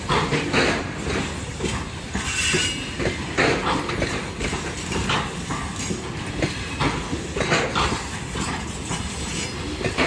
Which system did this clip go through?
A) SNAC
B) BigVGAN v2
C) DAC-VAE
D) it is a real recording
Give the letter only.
D